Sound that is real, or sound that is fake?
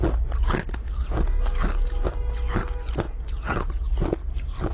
real